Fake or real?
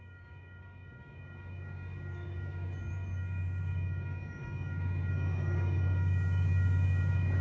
fake